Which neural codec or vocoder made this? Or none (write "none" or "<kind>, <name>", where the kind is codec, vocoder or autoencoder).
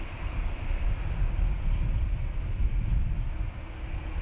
none